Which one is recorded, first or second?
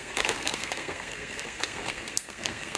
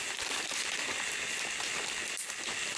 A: second